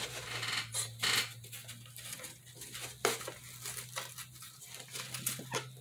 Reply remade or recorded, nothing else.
recorded